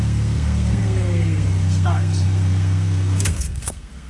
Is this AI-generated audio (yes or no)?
yes